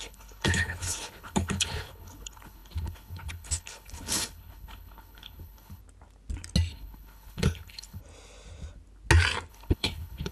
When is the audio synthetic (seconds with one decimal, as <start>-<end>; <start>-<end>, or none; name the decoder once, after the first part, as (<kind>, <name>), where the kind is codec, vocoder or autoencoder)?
0.0-5.8 (codec, HILCodec); 6.7-8.0; 9.5-10.3